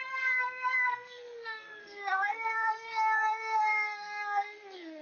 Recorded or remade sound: remade